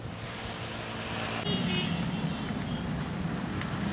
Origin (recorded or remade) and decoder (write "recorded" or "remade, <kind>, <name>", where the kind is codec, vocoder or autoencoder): recorded